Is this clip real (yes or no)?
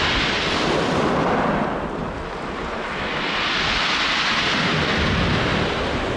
yes